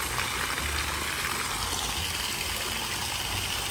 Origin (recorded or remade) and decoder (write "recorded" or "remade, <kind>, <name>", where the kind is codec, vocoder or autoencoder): recorded